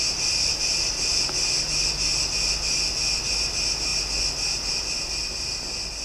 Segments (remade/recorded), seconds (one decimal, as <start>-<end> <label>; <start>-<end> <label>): 0.0-6.0 recorded